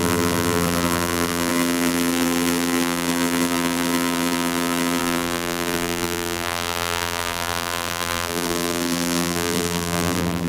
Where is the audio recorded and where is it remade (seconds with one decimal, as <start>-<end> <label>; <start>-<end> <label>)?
0.0-10.5 remade